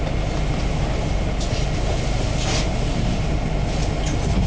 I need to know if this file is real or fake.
real